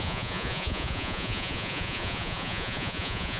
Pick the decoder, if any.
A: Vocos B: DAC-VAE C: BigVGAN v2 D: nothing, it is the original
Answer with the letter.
A